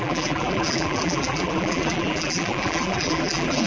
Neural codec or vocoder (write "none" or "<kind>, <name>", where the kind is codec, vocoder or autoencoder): vocoder, BigVGAN v2